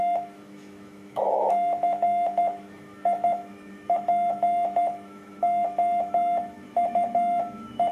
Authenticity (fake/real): fake